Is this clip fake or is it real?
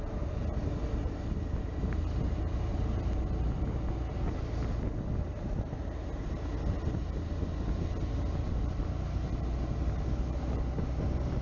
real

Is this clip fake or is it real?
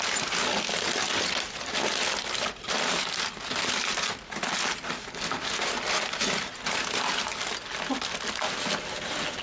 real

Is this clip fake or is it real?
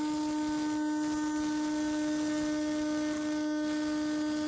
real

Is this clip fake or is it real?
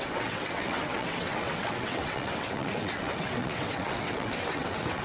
fake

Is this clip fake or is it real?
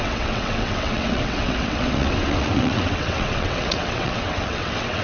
fake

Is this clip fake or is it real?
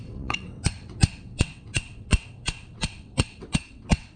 fake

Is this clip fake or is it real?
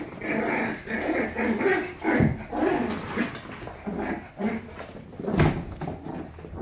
real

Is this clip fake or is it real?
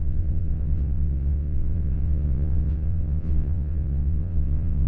fake